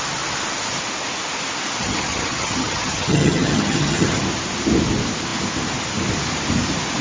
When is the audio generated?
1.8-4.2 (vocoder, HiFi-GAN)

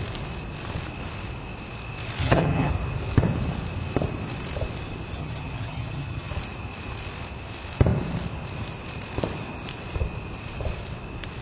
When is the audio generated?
2.2-2.7 (vocoder, HiFi-GAN); 5.2-6.3

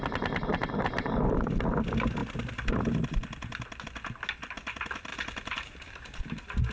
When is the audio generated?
none

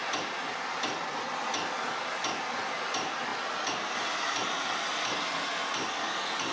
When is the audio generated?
none

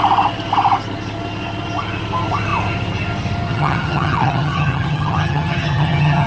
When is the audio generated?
3.5-6.3 (vocoder, HiFi-GAN)

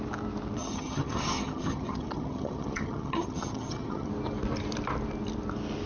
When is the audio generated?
0.6-4.1 (vocoder, HiFi-GAN)